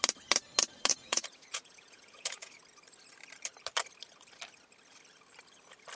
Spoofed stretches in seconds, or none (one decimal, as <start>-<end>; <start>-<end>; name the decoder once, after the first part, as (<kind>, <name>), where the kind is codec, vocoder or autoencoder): 0.9-2.6 (vocoder, Vocos)